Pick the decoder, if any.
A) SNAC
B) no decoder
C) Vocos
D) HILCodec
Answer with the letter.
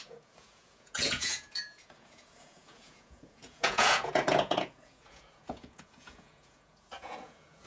C